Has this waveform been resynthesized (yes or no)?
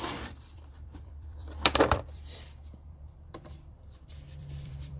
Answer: yes